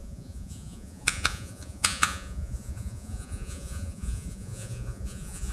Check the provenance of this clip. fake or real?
fake